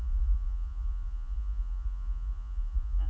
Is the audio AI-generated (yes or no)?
yes